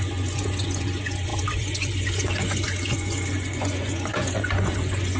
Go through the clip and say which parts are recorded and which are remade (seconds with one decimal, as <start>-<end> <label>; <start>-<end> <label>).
0.0-5.2 remade